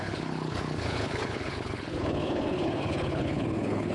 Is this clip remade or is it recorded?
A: remade